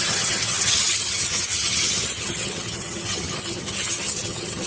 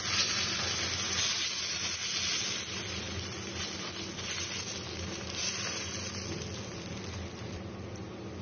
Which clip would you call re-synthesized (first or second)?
first